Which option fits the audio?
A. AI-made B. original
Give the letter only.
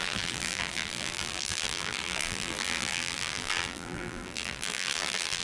A